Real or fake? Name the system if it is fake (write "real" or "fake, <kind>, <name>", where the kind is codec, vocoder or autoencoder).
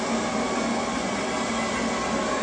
real